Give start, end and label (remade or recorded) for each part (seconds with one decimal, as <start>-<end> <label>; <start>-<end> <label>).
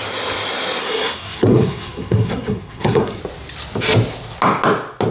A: 0.0-0.8 recorded; 0.8-3.2 remade; 3.2-5.1 recorded